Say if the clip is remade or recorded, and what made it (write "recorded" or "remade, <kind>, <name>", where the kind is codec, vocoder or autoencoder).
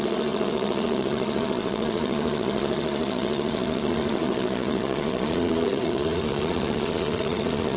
remade, vocoder, Vocos